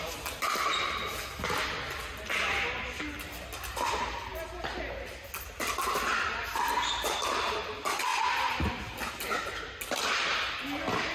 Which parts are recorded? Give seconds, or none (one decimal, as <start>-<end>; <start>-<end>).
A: 0.0-11.1